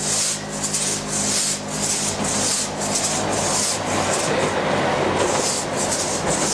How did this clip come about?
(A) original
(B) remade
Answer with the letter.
A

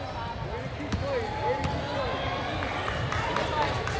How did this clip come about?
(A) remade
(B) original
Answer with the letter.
B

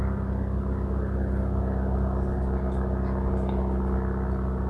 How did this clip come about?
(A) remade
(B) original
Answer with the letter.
B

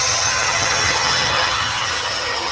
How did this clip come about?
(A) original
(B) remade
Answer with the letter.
B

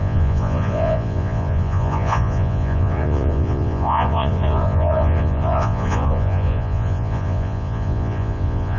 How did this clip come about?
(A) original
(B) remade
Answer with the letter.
B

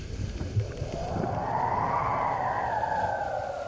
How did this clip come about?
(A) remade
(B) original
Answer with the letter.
B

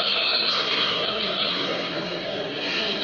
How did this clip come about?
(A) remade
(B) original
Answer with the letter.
A